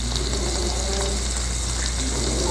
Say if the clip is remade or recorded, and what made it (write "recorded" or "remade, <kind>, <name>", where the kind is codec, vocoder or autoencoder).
recorded